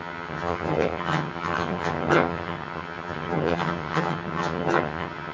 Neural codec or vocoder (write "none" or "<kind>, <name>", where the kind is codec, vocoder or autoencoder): vocoder, HiFi-GAN